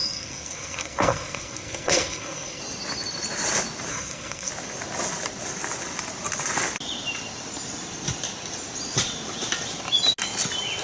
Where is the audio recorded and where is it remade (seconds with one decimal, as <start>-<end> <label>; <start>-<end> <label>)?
0.0-2.6 remade; 2.6-3.9 recorded; 3.9-4.5 remade; 4.5-10.8 recorded